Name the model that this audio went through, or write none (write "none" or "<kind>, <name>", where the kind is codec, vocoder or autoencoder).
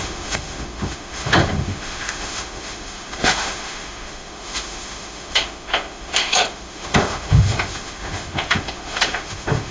autoencoder, DAC-VAE